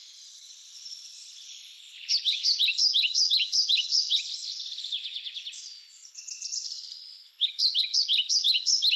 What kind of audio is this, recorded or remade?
remade